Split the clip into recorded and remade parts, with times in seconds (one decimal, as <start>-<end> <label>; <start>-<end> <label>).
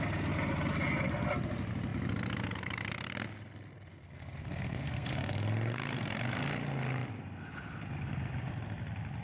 0.0-3.9 recorded; 3.9-5.3 remade; 5.3-9.2 recorded